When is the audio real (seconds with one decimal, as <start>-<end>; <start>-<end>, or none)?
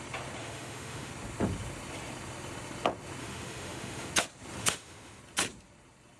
0.0-0.4; 1.1-3.2; 4.1-4.6; 5.2-6.2